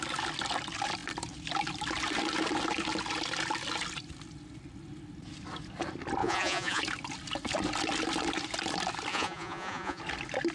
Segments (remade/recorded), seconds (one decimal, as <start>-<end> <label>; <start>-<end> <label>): 0.0-6.2 recorded; 6.2-6.8 remade; 6.8-9.1 recorded; 9.1-10.0 remade; 10.0-10.5 recorded